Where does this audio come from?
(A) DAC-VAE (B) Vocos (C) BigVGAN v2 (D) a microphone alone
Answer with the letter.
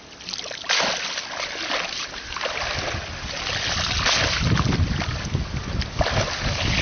D